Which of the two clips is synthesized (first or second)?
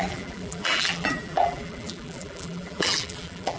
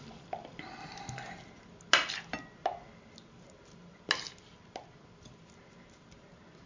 first